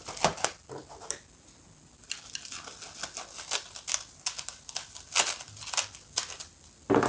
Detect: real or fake real